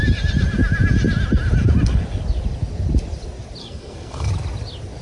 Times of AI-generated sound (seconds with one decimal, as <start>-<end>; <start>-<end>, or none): 3.6-4.3